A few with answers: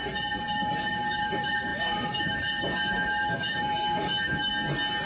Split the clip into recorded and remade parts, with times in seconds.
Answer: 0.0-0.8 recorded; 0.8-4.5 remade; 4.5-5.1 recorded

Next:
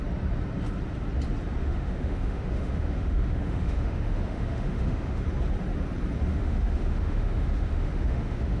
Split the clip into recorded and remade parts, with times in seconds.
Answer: 0.0-1.6 recorded; 1.6-5.2 remade; 5.2-6.3 recorded; 6.3-8.6 remade

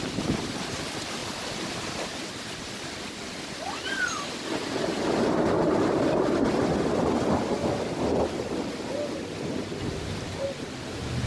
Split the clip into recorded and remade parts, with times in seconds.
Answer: 0.0-11.3 recorded

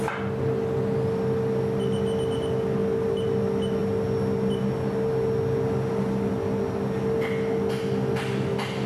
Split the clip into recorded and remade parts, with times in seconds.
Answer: 0.0-8.9 recorded